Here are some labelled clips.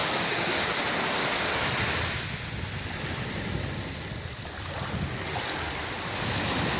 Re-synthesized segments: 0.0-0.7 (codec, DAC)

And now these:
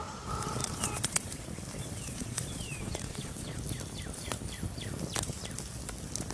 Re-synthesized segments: 0.6-1.4 (vocoder, Vocos); 1.8-3.6

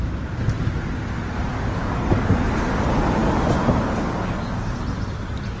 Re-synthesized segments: 1.5-2.3 (codec, DAC)

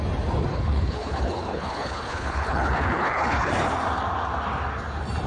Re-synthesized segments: 0.5-3.5 (codec, HILCodec)